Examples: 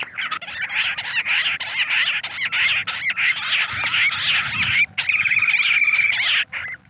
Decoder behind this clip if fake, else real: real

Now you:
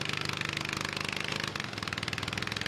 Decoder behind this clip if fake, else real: real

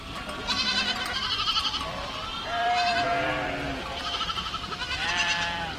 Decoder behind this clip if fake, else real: fake, vocoder, BigVGAN v2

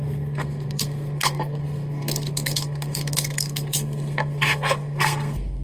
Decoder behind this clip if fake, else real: fake, codec, SNAC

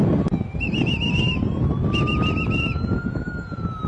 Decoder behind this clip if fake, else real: real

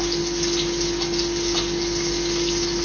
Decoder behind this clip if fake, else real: real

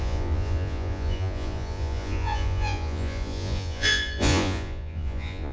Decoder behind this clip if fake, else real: fake, vocoder, Vocos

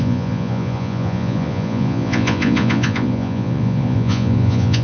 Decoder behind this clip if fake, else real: fake, vocoder, Vocos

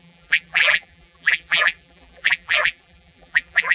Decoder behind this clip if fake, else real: fake, vocoder, BigVGAN v2